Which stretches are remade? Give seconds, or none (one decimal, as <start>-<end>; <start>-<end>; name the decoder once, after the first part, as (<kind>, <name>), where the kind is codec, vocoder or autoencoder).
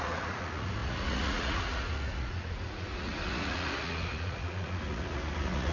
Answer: 0.0-5.7 (vocoder, Vocos)